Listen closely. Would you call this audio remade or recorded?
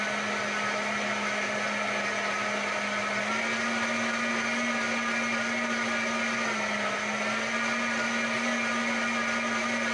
recorded